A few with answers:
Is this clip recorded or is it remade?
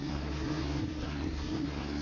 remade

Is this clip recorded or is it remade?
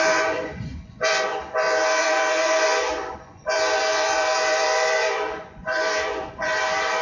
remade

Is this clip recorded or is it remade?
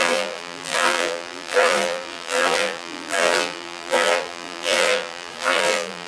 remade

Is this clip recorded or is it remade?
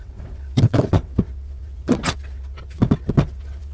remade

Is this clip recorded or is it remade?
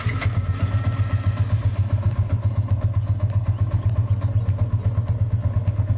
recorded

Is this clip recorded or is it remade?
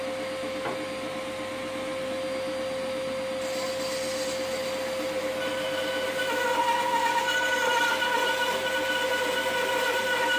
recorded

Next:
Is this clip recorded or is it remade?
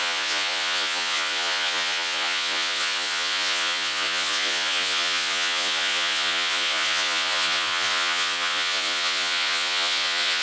remade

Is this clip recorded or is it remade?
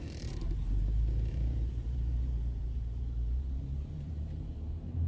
remade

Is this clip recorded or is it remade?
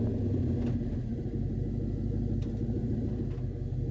recorded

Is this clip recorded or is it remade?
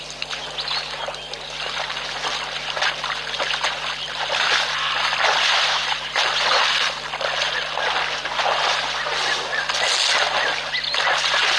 recorded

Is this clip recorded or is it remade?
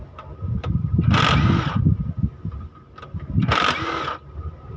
recorded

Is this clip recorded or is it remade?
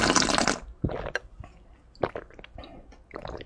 recorded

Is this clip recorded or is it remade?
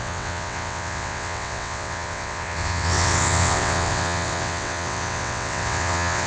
remade